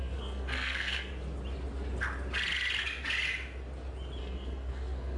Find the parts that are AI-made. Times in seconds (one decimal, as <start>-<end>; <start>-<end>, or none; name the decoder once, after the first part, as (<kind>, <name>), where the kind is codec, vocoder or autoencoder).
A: 0.0-1.1 (codec, SNAC); 4.2-5.2